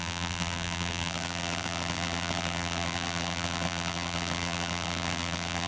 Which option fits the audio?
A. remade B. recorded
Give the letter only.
A